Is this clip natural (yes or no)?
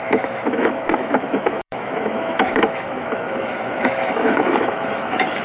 no